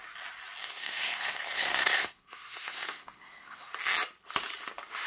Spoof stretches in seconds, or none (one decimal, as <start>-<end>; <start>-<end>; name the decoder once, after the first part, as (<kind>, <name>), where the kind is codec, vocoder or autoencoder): 0.6-3.7 (codec, SNAC)